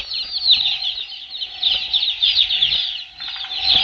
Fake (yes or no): no